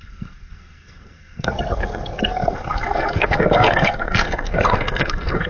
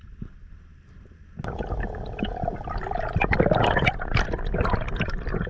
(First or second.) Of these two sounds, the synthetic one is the first